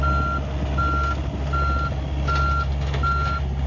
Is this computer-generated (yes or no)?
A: no